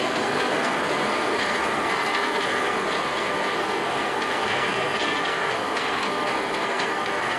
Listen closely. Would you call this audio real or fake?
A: fake